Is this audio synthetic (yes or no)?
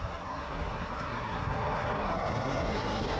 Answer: yes